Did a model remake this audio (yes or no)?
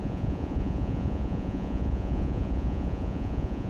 yes